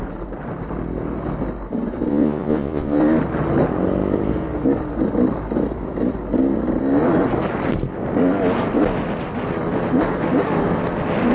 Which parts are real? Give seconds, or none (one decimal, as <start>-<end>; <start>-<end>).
0.0-2.1; 3.0-11.3

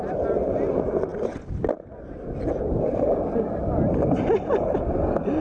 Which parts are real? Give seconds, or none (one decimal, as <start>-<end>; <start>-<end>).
0.0-5.4

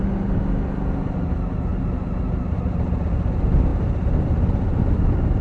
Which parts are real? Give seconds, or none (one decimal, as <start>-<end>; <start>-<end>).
0.0-5.4

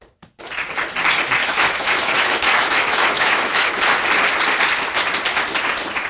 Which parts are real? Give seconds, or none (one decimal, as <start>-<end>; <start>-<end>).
0.0-1.4; 3.7-6.1

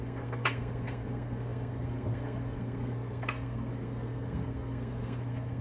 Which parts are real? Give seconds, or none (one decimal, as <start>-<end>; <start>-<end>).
none

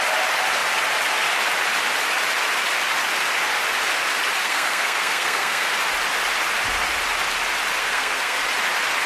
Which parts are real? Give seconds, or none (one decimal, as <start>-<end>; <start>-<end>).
0.0-4.4; 5.7-7.8; 8.4-9.1

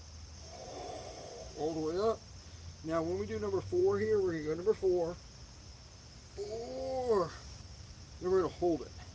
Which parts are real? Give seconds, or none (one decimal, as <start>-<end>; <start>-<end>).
0.0-9.1